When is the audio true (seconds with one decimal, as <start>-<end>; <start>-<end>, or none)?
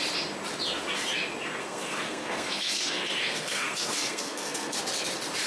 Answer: 0.0-1.6; 4.8-5.5